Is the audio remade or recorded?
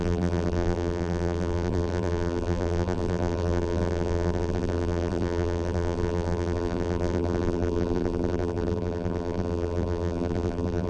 remade